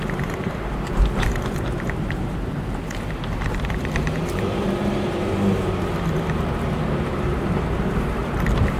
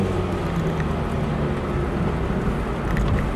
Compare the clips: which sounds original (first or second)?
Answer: second